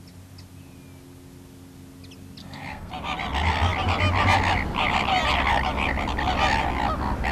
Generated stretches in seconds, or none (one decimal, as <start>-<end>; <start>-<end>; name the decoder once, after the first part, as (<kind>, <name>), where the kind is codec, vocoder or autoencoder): 2.4-2.9 (codec, SNAC)